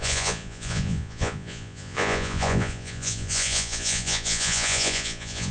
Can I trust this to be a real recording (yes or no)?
no